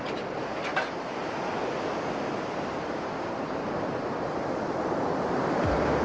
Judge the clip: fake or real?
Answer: real